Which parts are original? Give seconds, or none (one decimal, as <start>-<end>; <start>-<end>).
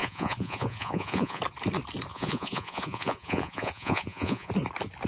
1.4-2.1; 4.5-5.1